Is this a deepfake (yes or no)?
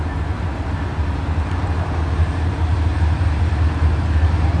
no